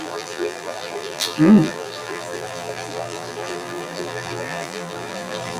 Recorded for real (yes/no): no